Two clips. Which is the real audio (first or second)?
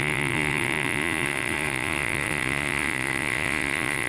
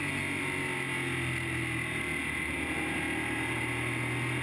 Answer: second